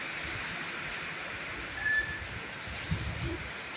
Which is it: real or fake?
fake